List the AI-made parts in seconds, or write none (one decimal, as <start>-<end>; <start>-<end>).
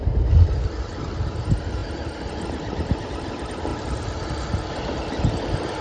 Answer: none